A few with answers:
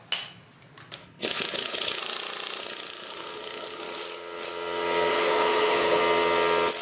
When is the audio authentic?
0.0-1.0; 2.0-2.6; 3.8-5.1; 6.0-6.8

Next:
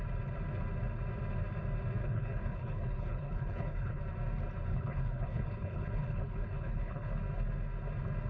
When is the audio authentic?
0.0-2.0; 4.0-4.7; 7.1-8.3

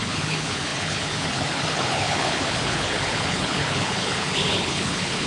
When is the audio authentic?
none

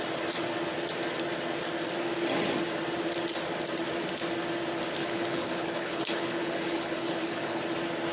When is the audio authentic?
0.0-5.0; 7.6-8.1

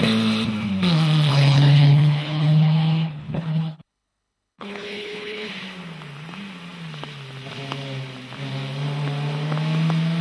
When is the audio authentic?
0.0-1.3; 5.5-10.2

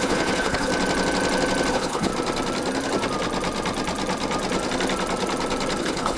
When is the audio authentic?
0.7-1.7; 2.1-5.8

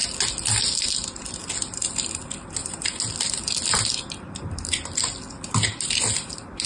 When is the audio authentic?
0.0-6.7

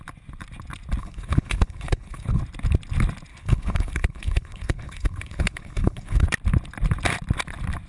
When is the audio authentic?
0.0-1.0; 2.4-3.3; 6.3-7.9